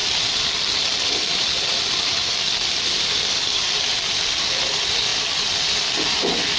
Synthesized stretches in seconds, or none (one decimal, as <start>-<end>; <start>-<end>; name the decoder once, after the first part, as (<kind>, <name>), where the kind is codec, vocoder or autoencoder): 0.0-4.0 (vocoder, BigVGAN v2)